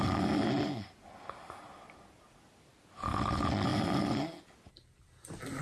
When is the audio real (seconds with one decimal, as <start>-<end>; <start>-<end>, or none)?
0.0-5.6